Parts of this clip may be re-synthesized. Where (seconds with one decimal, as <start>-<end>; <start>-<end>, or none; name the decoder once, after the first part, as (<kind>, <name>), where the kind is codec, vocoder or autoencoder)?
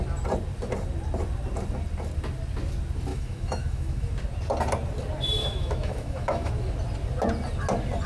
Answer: 3.1-4.1 (autoencoder, DAC-VAE); 5.4-6.5